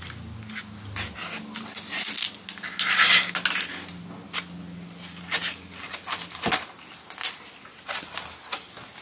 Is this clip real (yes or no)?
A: yes